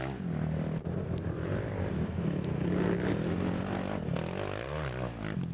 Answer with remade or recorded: recorded